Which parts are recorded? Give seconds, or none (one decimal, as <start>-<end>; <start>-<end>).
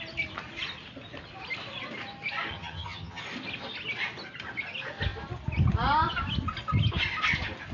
0.0-2.5; 3.2-7.7